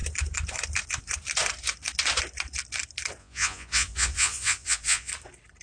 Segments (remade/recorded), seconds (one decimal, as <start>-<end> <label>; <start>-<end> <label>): 0.0-3.2 recorded; 3.2-5.1 remade; 5.1-5.6 recorded